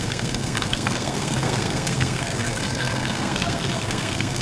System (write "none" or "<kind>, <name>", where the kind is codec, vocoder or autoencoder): codec, SNAC